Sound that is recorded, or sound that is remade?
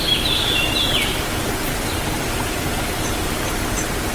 recorded